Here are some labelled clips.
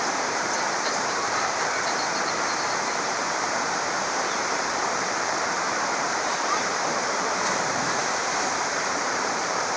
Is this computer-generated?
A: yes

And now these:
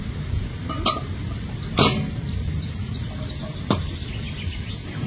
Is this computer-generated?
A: no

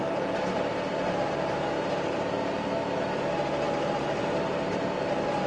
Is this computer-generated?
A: no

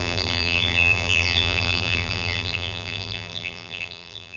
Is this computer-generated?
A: yes